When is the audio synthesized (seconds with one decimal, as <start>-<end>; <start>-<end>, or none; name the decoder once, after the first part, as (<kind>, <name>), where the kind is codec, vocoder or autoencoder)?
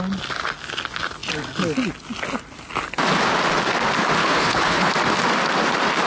4.2-4.9 (codec, HILCodec)